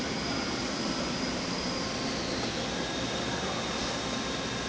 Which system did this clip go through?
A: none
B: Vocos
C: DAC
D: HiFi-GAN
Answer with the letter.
A